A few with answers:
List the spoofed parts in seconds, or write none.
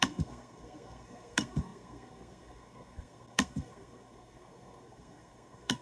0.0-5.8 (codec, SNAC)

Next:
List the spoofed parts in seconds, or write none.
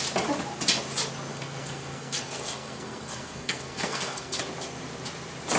1.3-4.4 (codec, SNAC)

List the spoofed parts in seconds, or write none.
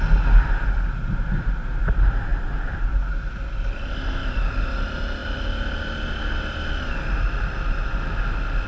none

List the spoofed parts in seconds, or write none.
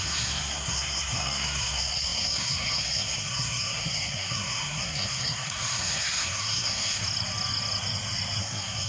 0.0-7.0 (codec, SNAC); 8.4-8.9